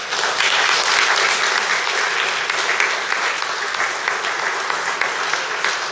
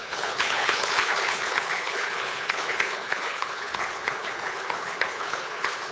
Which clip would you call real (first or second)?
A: first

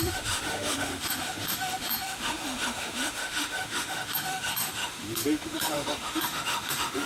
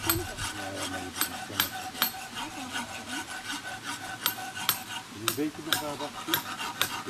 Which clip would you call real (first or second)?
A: second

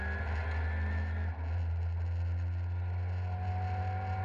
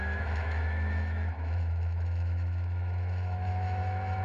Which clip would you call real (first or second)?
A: first